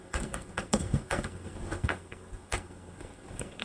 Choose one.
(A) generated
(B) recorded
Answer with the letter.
A